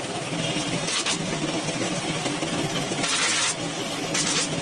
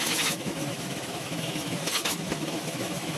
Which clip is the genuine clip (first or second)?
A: first